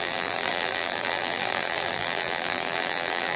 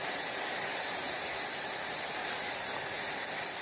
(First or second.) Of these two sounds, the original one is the second